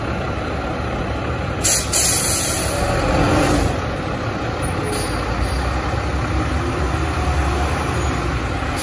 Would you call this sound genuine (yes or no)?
yes